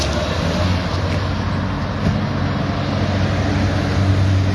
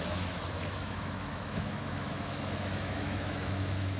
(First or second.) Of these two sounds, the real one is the first